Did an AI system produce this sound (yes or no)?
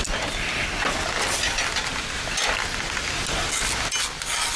no